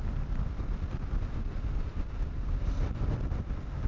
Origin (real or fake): real